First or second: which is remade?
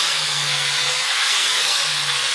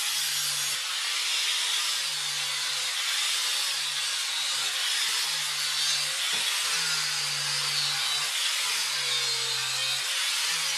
first